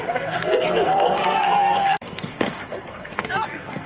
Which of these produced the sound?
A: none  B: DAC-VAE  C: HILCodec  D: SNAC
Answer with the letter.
D